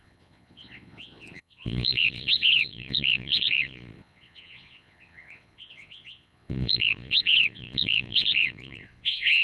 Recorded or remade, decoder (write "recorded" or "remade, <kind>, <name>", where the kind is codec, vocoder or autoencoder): remade, vocoder, Vocos